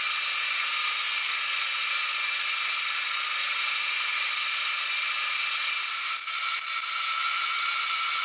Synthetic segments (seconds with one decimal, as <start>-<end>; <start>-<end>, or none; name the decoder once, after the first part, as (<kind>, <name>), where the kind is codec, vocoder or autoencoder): none